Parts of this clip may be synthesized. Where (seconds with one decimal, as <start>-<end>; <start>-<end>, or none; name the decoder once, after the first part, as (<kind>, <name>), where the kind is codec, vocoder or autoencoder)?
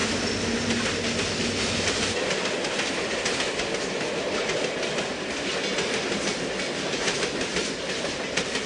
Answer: 7.6-8.7 (vocoder, BigVGAN v2)